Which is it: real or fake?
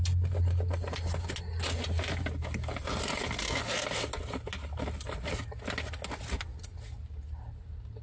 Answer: real